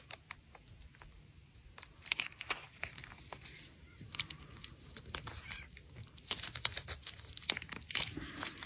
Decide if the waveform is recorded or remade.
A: remade